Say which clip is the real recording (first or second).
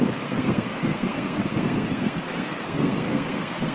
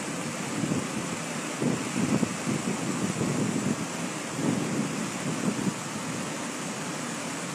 second